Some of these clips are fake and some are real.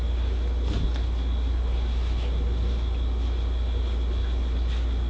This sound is real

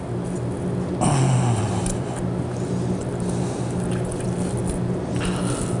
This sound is real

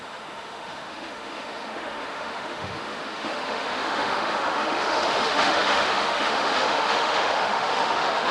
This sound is fake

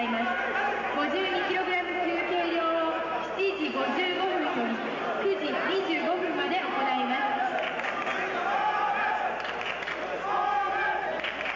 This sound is real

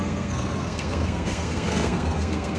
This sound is fake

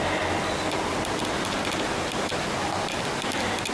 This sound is real